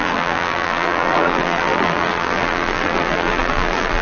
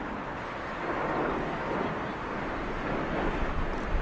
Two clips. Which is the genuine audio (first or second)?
second